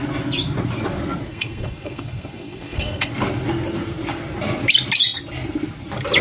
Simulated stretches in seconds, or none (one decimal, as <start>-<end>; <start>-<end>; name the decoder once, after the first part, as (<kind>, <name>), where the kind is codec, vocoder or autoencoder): 1.3-3.1 (codec, SNAC)